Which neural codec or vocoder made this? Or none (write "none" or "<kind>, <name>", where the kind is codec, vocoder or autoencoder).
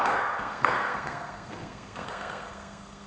codec, SNAC